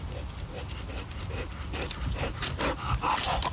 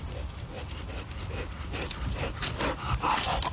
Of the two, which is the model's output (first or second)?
second